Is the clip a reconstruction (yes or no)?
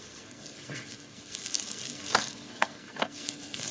yes